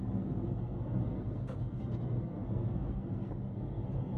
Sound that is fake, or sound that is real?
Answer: fake